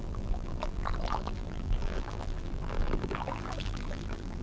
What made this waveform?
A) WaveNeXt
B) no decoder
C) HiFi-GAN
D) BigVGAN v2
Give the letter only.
D